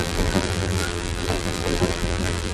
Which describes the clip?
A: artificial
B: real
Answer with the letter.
A